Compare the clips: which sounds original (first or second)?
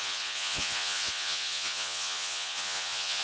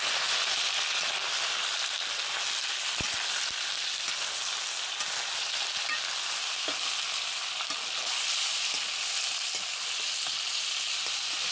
second